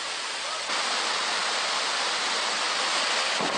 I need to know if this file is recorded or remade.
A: recorded